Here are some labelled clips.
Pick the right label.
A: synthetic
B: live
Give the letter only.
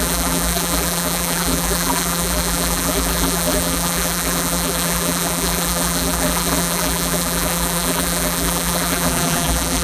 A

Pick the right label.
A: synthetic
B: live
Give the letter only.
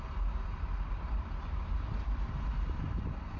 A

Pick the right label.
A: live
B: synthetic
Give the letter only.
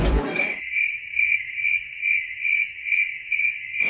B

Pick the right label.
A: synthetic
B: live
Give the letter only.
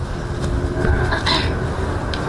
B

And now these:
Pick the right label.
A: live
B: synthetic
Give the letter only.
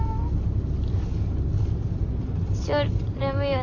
A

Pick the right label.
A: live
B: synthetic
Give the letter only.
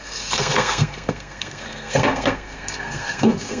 B